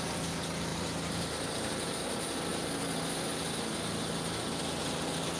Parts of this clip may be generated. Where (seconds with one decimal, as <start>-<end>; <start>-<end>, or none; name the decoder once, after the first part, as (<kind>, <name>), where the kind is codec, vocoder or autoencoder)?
0.7-1.7 (vocoder, BigVGAN v2)